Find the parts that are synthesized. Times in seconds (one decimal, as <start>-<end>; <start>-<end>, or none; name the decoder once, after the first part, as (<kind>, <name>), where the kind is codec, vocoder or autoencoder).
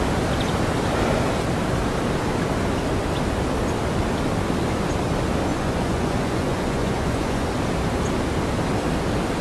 5.5-7.5 (vocoder, Vocos)